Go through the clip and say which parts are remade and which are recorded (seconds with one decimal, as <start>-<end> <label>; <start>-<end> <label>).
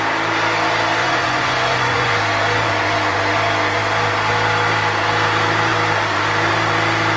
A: 0.0-1.0 recorded; 1.0-2.1 remade; 2.1-7.2 recorded